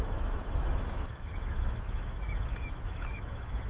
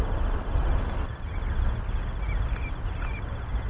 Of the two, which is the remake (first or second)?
first